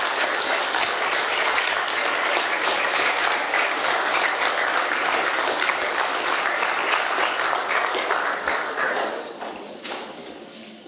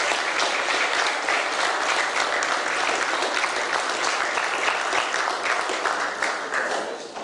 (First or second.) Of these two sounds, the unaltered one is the second